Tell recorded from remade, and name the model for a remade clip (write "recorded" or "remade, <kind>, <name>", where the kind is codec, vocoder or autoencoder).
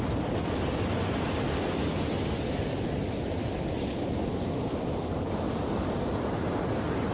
recorded